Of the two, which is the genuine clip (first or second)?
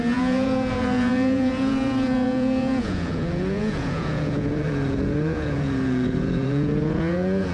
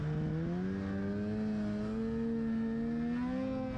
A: second